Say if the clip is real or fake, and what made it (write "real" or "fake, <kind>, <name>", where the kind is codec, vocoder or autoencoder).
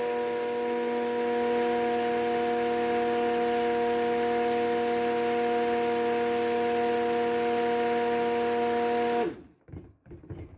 real